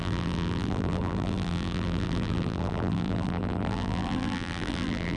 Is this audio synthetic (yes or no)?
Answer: yes